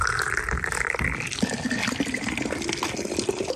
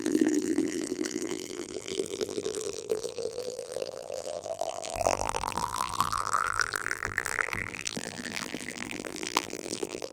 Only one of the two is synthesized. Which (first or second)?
second